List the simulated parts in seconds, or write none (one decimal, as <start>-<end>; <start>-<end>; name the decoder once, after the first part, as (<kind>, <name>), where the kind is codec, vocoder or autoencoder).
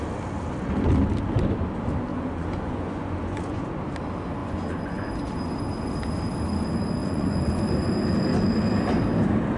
2.1-3.6 (vocoder, Vocos); 4.4-5.1; 7.0-7.6